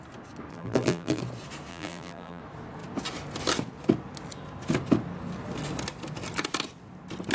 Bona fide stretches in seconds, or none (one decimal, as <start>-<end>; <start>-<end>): 0.0-0.5; 1.2-1.7; 2.4-7.3